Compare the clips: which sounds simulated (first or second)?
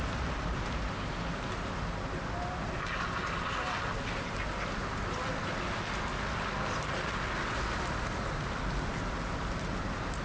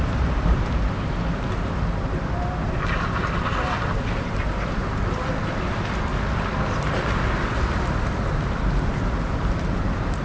second